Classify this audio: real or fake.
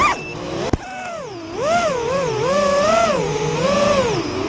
real